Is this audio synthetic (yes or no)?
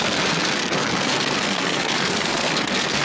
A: yes